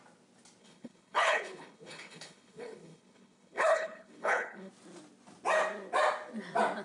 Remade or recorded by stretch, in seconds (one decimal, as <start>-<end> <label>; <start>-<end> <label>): 0.0-0.6 recorded; 0.6-4.7 remade; 4.7-6.8 recorded